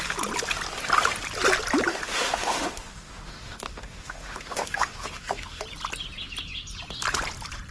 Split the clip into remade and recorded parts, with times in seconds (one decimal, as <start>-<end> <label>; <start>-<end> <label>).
0.0-1.9 recorded; 1.9-5.6 remade; 5.6-7.7 recorded